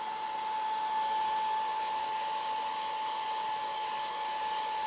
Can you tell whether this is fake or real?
real